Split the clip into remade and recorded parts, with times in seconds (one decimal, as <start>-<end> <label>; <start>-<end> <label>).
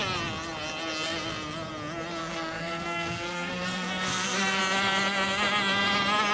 0.0-2.2 recorded; 2.2-4.6 remade; 4.6-6.3 recorded